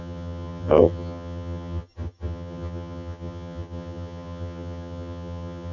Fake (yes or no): yes